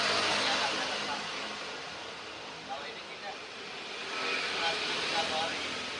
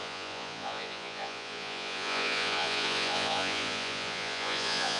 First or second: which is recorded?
first